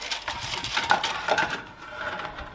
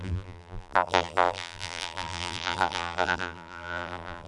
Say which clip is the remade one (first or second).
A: second